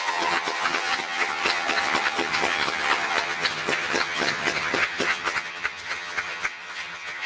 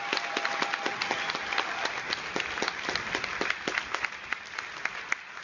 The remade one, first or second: first